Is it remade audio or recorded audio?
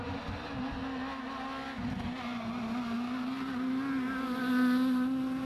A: recorded